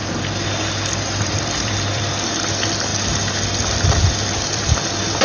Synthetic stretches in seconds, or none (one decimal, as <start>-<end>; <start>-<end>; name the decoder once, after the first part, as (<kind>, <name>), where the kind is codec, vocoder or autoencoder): 0.0-2.9 (vocoder, BigVGAN v2); 4.4-5.2